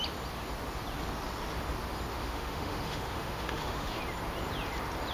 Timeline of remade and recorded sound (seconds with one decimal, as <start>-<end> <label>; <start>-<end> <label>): 0.0-2.1 recorded; 2.1-4.0 remade; 4.0-5.1 recorded